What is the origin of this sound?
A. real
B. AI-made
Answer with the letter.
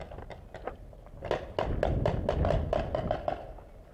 A